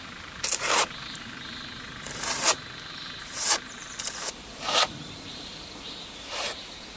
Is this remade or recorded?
remade